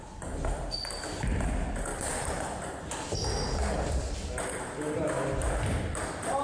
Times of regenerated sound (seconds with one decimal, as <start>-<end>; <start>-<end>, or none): none